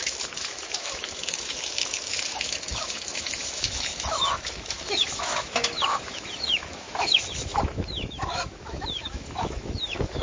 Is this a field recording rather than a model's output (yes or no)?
no